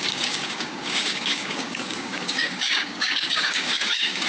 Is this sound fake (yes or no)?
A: yes